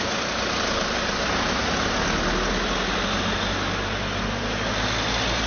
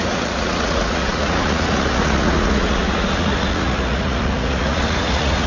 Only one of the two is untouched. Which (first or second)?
first